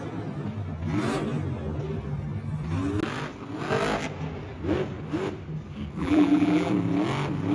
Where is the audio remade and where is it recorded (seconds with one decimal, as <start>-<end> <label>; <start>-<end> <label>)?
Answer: 0.0-6.0 recorded; 6.0-6.7 remade; 6.7-7.5 recorded